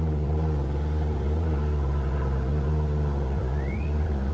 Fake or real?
fake